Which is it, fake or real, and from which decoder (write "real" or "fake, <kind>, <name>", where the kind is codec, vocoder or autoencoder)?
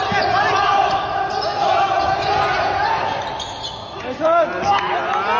real